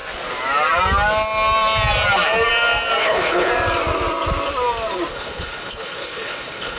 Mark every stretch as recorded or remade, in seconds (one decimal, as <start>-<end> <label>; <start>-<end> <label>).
0.0-3.0 recorded; 3.0-3.5 remade; 3.5-5.1 recorded; 5.1-6.8 remade